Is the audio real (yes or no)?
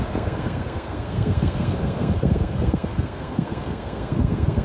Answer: no